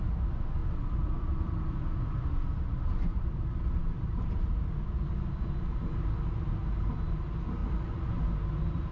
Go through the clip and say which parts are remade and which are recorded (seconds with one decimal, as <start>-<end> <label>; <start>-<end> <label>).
0.0-0.6 recorded; 0.6-1.6 remade; 1.6-7.6 recorded; 7.6-8.2 remade; 8.2-8.9 recorded